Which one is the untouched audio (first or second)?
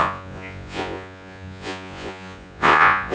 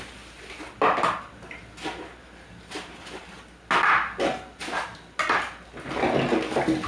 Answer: second